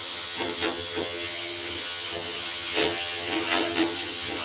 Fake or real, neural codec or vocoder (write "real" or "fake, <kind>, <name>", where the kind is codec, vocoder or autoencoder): fake, vocoder, HiFi-GAN